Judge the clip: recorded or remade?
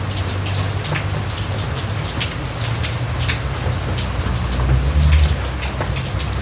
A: recorded